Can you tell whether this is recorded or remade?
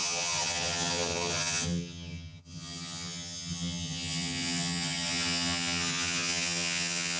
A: remade